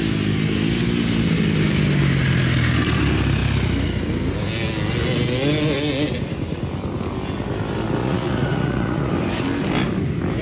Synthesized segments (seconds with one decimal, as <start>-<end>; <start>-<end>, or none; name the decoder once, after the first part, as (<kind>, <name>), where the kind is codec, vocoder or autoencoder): 8.0-9.1 (vocoder, Vocos)